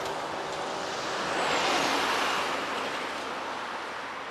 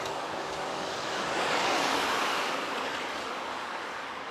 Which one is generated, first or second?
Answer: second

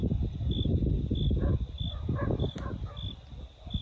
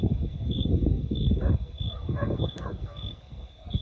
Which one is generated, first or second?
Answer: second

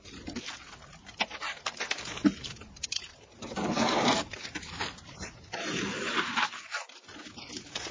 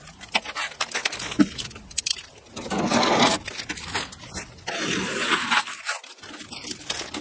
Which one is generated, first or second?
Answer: first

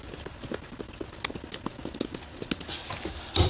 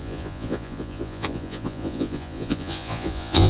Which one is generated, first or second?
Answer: second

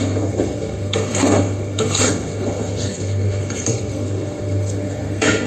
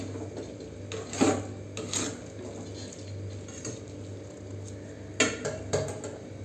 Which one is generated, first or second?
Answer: first